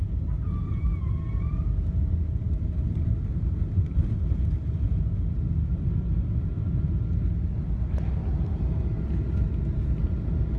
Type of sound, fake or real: real